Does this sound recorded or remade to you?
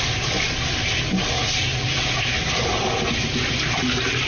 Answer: recorded